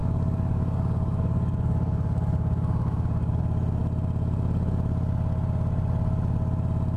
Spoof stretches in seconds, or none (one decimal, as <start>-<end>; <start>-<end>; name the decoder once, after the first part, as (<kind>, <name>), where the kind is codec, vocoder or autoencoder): 0.0-3.4 (codec, DAC)